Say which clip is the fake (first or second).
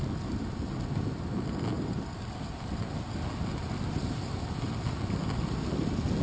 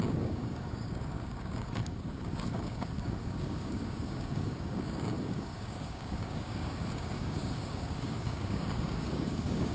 second